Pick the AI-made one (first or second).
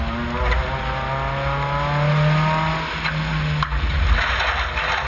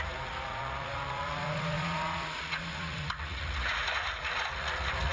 second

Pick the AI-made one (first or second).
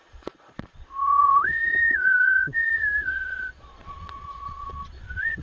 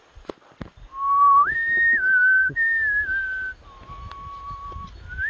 first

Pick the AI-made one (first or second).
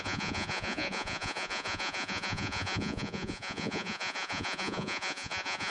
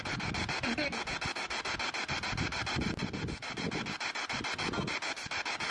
first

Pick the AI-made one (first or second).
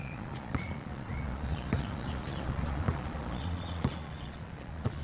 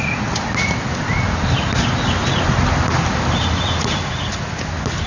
first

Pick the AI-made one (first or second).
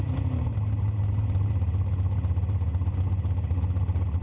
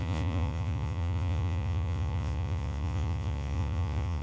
second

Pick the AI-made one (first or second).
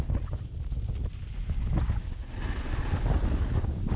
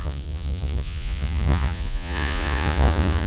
second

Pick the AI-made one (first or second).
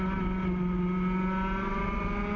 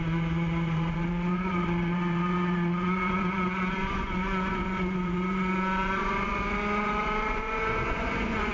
second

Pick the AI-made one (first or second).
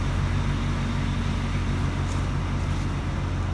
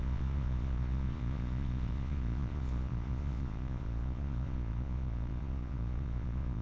second